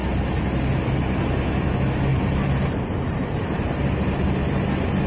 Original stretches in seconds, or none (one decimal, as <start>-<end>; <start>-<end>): 0.0-2.1; 3.8-5.1